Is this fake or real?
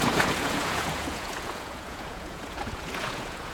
fake